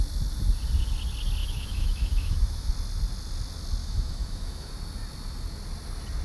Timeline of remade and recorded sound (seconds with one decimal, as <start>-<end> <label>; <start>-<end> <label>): 0.0-1.4 recorded; 1.4-2.7 remade; 2.7-3.8 recorded; 3.8-4.7 remade; 4.7-6.2 recorded